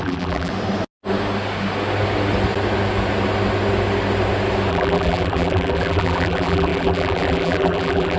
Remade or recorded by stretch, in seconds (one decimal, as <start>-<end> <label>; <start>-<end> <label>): 0.0-0.5 remade; 0.5-4.7 recorded; 4.7-8.2 remade